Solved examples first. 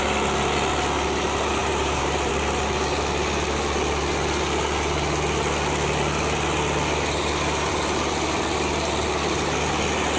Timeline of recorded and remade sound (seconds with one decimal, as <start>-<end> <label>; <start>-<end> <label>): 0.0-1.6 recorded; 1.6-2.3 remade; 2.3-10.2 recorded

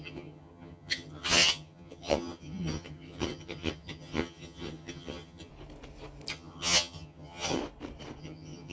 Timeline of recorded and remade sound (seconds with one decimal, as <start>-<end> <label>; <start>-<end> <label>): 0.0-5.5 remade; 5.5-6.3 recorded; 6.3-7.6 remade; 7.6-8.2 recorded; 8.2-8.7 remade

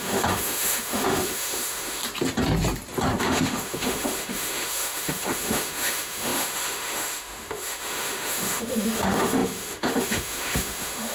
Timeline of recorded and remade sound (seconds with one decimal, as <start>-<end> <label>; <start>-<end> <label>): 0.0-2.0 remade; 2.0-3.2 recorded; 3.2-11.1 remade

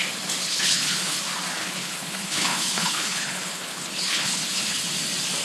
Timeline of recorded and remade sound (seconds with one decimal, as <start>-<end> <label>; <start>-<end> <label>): 0.0-0.4 recorded; 0.4-1.2 remade; 1.2-1.6 recorded; 1.6-4.8 remade; 4.8-5.4 recorded

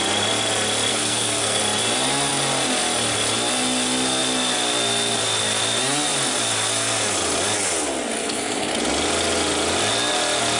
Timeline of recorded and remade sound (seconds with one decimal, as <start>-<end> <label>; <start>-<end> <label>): 0.0-0.9 recorded; 0.9-1.6 remade; 1.6-8.2 recorded; 8.2-8.7 remade; 8.7-10.6 recorded

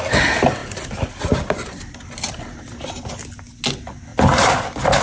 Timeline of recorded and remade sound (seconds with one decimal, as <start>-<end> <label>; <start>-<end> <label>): 0.0-5.0 recorded